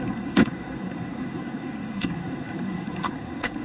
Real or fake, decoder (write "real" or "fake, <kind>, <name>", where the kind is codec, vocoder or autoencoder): fake, codec, SNAC